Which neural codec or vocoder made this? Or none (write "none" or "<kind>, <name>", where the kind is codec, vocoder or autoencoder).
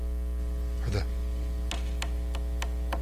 none